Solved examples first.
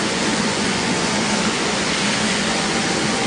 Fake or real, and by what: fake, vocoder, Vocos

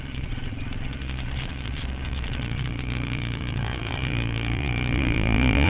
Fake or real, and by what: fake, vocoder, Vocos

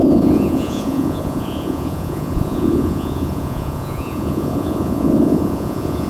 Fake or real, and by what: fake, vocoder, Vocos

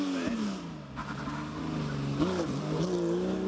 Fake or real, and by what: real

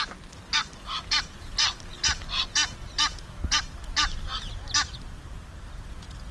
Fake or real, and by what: real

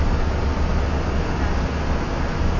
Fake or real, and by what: real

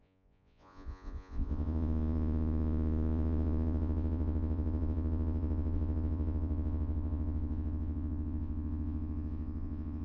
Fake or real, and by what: fake, vocoder, Vocos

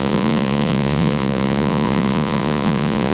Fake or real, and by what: fake, vocoder, Vocos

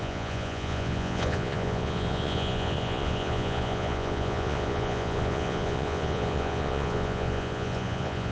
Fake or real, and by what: fake, vocoder, Vocos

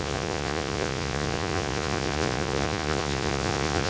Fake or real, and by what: fake, vocoder, Vocos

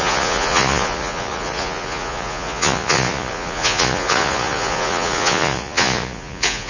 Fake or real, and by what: fake, vocoder, Vocos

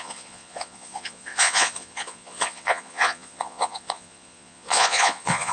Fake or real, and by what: fake, vocoder, Vocos